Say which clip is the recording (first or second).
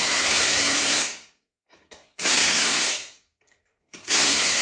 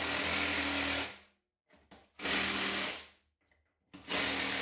second